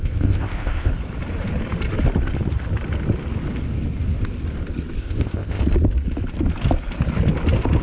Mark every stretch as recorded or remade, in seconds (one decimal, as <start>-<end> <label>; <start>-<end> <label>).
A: 0.0-0.9 remade; 0.9-5.0 recorded; 5.0-5.6 remade; 5.6-7.8 recorded